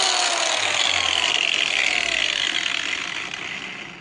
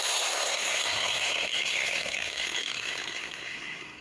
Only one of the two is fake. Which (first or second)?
second